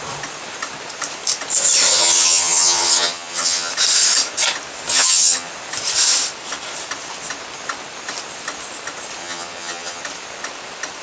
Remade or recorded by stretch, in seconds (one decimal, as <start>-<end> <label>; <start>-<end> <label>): 0.0-1.9 recorded; 1.9-3.7 remade; 3.7-4.9 recorded; 4.9-5.5 remade; 5.5-9.2 recorded; 9.2-10.0 remade; 10.0-11.0 recorded